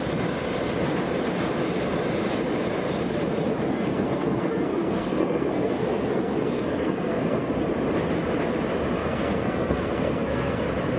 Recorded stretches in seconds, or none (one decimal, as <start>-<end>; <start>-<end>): 0.0-3.7; 7.5-9.0; 10.6-11.0